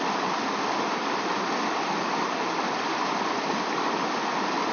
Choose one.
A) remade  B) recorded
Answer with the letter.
B